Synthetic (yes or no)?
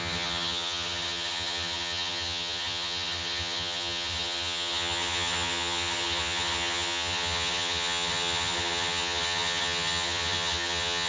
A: yes